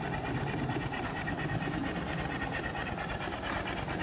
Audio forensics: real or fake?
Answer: real